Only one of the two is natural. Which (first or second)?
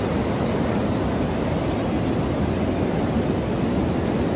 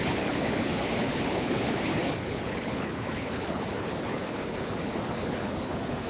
first